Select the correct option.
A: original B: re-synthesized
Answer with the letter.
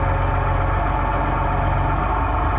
A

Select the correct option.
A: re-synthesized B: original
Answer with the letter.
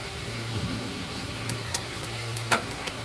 A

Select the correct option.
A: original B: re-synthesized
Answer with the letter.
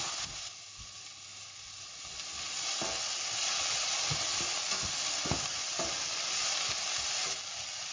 A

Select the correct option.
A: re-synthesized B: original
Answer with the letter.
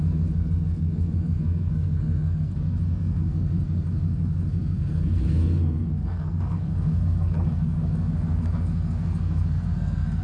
A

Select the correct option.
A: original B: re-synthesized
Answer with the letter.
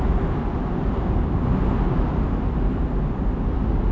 A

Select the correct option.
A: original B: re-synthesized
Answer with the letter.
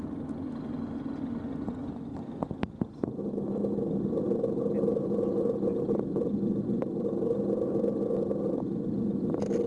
A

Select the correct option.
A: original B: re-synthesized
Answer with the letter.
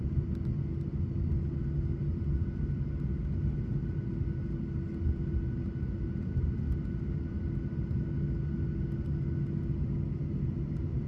A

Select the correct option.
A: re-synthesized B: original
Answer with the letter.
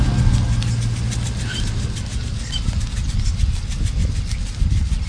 B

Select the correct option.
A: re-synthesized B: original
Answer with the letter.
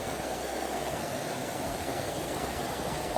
A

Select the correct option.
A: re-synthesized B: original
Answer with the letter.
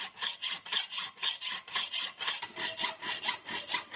B